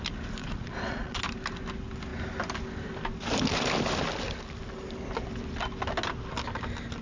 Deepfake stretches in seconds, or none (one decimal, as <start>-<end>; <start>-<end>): 0.4-1.2